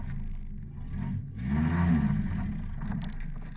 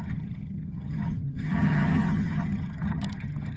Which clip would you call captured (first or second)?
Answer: first